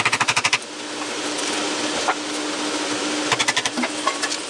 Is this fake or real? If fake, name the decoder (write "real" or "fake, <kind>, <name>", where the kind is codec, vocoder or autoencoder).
real